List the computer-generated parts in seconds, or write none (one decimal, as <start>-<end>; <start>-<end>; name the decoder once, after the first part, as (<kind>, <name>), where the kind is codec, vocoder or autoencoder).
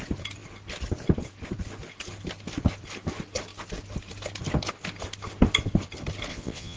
6.3-6.8 (vocoder, Vocos)